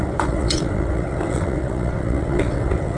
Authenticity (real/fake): fake